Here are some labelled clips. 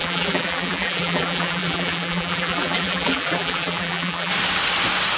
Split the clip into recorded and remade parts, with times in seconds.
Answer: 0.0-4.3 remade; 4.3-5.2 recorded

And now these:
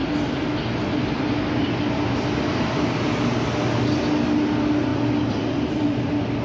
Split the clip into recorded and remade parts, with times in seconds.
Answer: 0.0-4.9 recorded; 4.9-6.4 remade

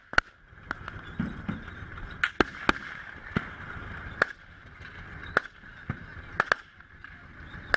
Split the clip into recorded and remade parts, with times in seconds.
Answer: 0.0-7.8 recorded

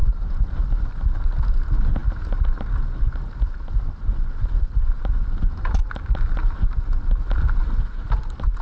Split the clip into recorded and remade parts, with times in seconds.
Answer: 0.0-0.7 remade; 0.7-8.6 recorded

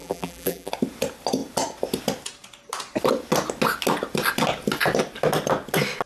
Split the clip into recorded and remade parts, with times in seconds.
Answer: 0.0-0.7 remade; 0.7-6.1 recorded